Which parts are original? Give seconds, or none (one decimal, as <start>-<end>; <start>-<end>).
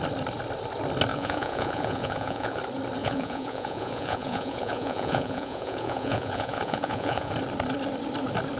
0.0-1.1; 2.6-3.0; 7.3-8.6